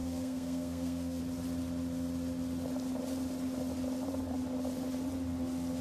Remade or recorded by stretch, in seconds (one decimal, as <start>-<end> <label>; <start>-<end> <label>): 0.0-1.2 remade; 1.2-5.8 recorded